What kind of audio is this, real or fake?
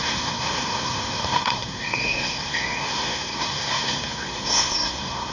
fake